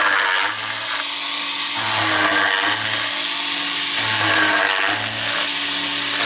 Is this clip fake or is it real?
real